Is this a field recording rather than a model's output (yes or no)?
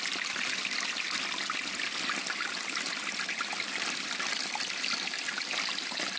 yes